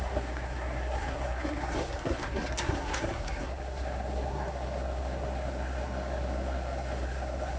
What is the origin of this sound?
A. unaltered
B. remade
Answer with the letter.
B